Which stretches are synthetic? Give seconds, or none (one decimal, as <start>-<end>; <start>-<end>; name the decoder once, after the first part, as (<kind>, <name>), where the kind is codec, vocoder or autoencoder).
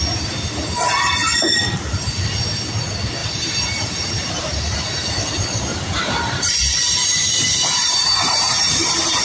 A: 3.2-4.6 (vocoder, BigVGAN v2); 5.7-9.2